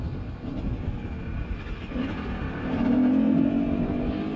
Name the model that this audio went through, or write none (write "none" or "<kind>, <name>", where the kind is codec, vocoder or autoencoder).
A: none